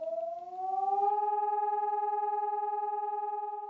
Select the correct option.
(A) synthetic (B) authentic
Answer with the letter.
B